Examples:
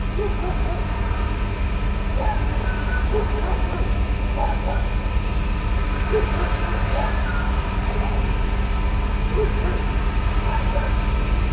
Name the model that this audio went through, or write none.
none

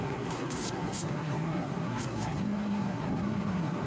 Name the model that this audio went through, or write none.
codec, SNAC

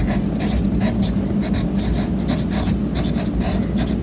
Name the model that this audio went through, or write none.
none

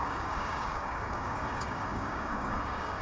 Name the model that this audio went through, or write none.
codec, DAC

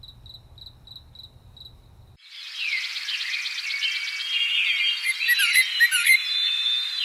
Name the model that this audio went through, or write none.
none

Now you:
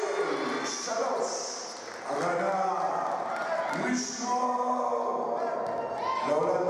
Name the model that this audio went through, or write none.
none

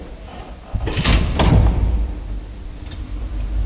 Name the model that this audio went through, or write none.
vocoder, BigVGAN v2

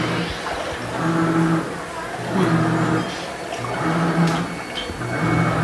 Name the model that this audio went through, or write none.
none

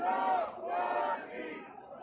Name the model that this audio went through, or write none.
none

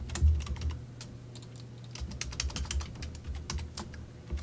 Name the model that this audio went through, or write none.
none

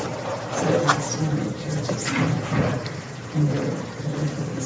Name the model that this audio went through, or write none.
vocoder, BigVGAN v2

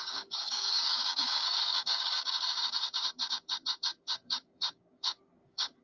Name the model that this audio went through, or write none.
codec, DAC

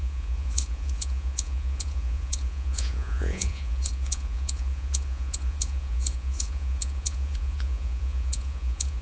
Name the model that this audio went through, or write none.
vocoder, Vocos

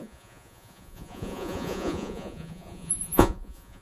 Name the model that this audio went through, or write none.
vocoder, Vocos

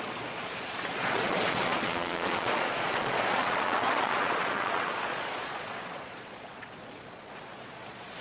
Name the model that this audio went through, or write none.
vocoder, Vocos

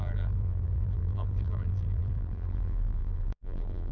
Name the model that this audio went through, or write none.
vocoder, BigVGAN v2